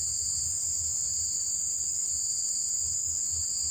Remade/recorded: recorded